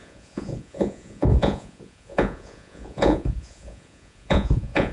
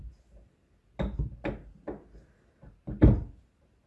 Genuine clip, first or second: second